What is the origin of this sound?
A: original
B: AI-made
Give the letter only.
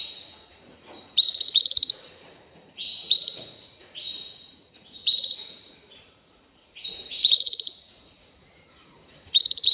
B